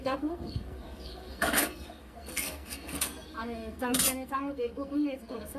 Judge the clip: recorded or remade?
remade